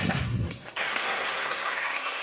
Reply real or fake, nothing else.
fake